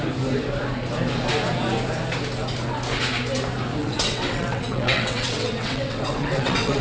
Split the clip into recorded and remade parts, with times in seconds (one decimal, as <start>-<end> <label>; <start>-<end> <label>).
0.0-3.8 recorded; 3.8-6.8 remade